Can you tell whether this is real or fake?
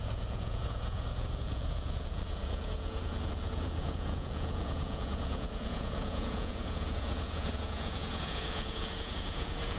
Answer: fake